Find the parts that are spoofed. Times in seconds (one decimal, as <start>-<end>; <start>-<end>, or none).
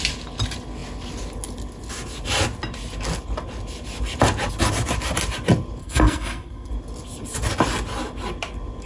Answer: 5.8-6.7